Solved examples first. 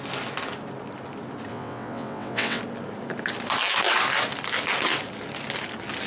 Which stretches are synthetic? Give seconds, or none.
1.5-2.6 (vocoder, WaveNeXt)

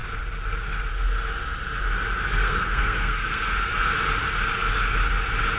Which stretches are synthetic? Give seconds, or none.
2.3-3.9 (codec, SNAC)

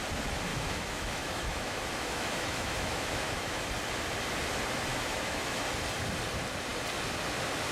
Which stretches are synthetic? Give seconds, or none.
0.5-3.7 (autoencoder, DAC-VAE); 4.9-5.6

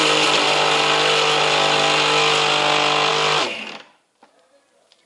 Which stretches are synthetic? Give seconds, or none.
none